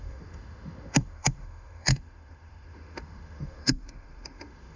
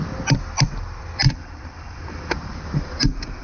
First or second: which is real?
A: second